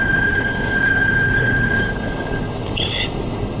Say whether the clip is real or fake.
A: fake